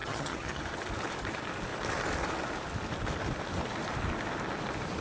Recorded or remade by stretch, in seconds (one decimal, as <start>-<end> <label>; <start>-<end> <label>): 0.0-0.6 remade; 0.6-5.0 recorded